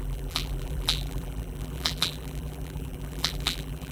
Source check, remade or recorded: remade